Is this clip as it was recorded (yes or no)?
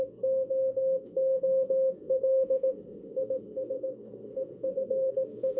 no